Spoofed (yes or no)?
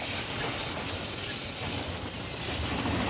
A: no